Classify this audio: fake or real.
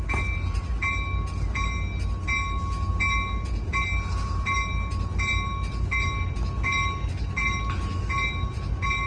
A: real